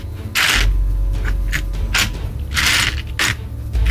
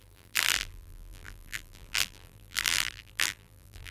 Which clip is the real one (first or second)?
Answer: first